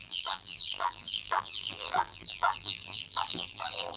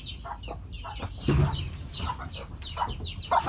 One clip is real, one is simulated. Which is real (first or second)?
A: second